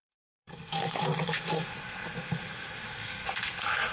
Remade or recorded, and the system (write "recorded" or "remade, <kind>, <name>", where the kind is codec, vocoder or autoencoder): remade, codec, SNAC